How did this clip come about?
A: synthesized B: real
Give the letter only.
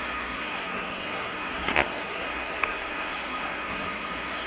A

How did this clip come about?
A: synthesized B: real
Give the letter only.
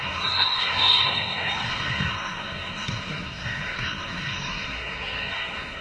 A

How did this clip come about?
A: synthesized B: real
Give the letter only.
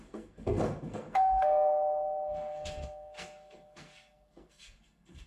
A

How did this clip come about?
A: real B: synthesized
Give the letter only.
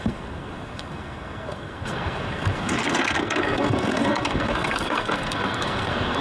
B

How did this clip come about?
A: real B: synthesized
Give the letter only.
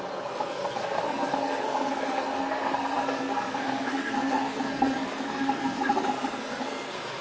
B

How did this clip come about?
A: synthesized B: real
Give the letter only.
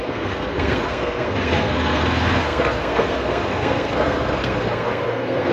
A